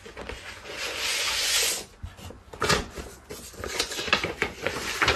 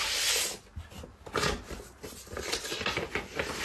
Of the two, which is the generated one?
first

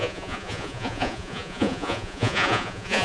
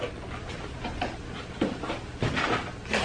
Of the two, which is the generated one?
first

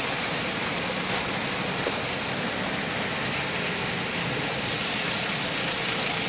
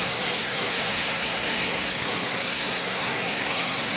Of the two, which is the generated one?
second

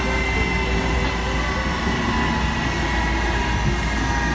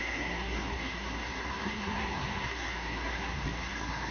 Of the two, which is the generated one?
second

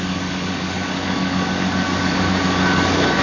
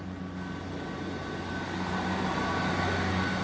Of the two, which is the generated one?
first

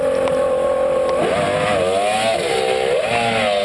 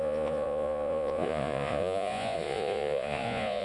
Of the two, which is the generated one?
second